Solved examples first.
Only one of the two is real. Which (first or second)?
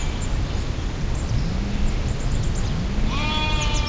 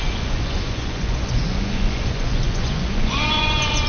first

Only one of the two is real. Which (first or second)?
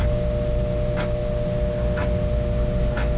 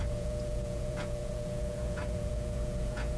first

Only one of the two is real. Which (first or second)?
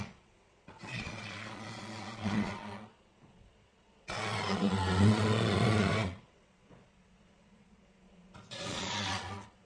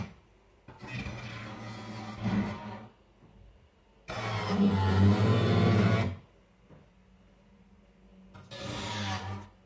second